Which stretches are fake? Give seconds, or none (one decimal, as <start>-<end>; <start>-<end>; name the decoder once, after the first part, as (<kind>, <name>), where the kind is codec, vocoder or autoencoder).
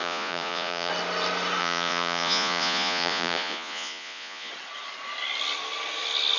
0.0-0.9 (vocoder, Vocos); 1.6-4.5